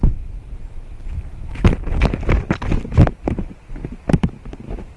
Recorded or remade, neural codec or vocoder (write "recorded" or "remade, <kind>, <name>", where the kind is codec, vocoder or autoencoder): recorded